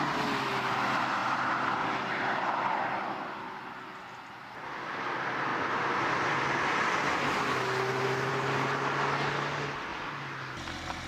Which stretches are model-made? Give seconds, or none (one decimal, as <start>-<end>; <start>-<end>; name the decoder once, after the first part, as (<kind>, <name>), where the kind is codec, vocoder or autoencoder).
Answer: none

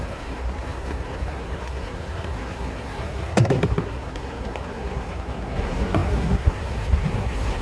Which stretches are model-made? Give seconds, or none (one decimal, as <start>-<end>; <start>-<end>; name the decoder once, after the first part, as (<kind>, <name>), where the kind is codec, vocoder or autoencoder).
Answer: 0.0-7.6 (codec, SNAC)